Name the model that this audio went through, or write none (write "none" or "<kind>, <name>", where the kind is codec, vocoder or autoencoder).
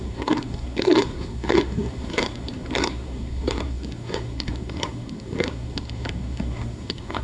codec, SNAC